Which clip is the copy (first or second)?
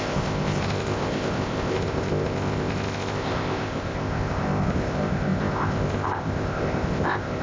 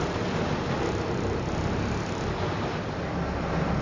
first